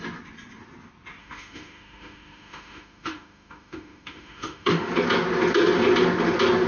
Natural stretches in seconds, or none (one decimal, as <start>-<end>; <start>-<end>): 0.0-1.2; 4.9-6.7